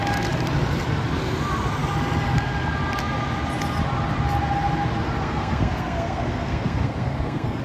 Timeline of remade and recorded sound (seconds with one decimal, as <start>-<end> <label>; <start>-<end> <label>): 0.0-5.2 recorded; 5.2-7.6 remade